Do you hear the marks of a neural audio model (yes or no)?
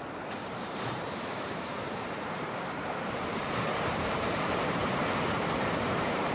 yes